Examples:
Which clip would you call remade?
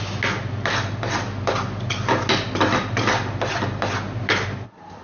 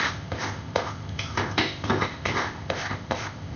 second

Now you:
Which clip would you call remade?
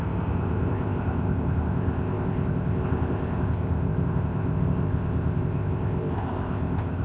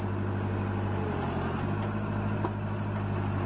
first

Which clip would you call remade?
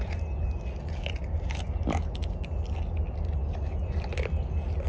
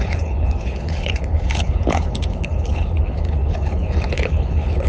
second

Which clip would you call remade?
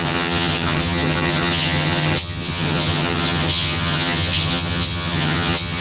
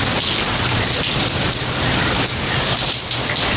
first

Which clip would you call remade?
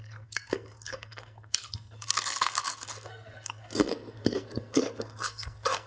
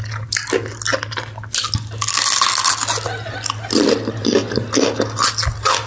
first